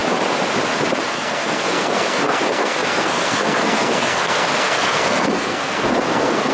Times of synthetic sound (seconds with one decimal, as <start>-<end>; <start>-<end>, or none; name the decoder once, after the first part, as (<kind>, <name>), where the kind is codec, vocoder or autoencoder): 1.0-6.5 (codec, SNAC)